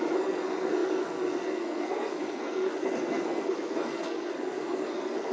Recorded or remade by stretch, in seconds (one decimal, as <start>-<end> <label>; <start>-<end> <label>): 0.0-5.3 remade